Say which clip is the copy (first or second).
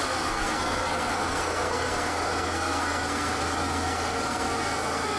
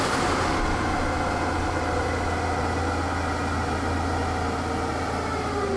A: first